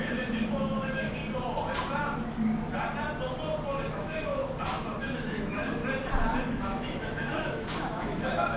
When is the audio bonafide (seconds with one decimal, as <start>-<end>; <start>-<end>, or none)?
1.2-3.9; 4.4-5.0; 5.8-6.5